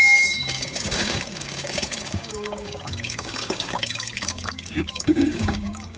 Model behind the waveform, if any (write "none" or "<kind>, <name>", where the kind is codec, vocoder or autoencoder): codec, DAC